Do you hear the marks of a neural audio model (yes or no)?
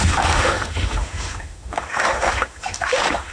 yes